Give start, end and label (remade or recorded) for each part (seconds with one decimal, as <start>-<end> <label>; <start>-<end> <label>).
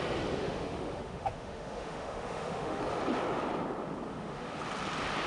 0.0-0.4 recorded; 0.4-2.8 remade; 2.8-4.1 recorded; 4.1-4.6 remade; 4.6-5.3 recorded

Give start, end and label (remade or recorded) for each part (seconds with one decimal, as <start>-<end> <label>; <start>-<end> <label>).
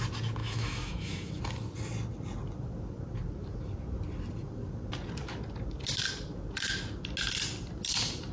0.0-0.4 recorded; 0.4-1.4 remade; 1.4-8.3 recorded